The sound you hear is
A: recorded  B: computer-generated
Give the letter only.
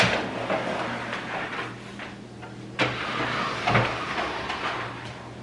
A